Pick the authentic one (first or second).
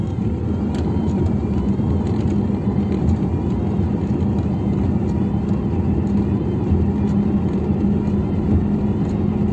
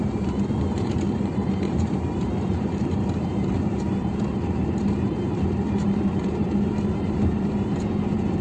first